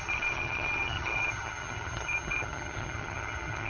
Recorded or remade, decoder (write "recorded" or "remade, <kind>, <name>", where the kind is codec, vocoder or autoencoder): remade, vocoder, HiFi-GAN